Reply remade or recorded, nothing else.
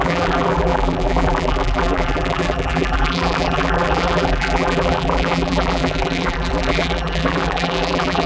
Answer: remade